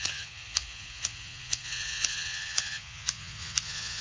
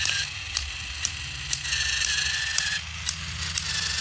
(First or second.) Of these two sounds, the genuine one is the second